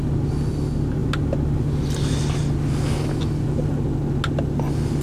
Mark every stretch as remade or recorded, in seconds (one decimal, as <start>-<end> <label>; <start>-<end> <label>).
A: 0.0-5.0 recorded